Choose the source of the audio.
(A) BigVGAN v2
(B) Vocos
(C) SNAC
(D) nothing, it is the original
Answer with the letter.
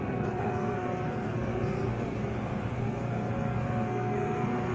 C